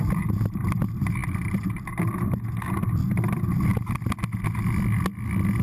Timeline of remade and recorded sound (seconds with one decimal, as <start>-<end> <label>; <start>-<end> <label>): 0.0-5.6 recorded